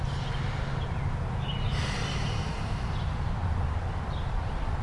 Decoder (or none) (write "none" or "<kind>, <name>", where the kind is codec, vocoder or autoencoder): vocoder, BigVGAN v2